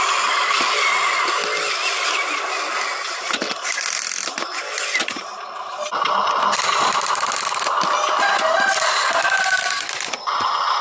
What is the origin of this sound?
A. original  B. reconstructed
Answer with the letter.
A